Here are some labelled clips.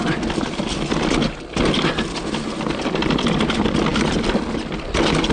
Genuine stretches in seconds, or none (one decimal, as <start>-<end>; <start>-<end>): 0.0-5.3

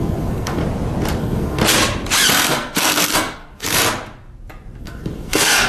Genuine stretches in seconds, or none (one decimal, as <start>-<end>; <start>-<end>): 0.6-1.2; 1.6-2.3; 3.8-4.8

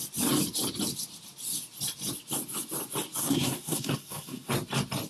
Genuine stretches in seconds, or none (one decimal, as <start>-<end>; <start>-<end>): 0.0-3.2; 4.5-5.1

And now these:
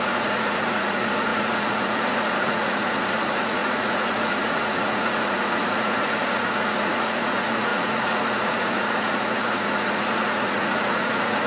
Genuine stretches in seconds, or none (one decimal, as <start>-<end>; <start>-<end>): none